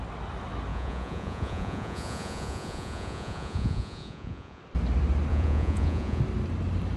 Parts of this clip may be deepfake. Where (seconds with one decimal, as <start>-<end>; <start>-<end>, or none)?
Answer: 0.7-4.6; 5.3-6.2